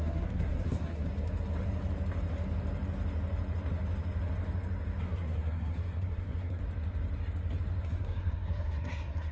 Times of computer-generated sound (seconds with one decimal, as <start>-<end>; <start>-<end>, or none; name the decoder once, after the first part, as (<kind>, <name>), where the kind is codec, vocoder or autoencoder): 0.0-1.1 (codec, SNAC); 5.0-6.6; 7.8-9.3

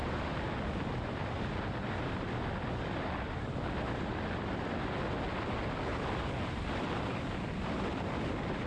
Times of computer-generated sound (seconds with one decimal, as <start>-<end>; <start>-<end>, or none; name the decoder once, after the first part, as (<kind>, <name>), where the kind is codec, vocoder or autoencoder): none

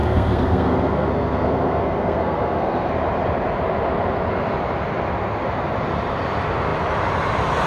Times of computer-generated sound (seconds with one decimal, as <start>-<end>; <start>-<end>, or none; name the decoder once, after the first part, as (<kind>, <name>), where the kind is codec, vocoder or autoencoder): 0.0-2.9 (codec, SNAC)

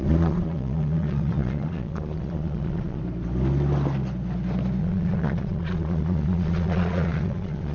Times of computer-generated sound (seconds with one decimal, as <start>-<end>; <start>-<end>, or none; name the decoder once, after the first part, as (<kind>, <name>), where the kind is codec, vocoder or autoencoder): 0.0-3.0 (vocoder, Vocos); 4.8-7.7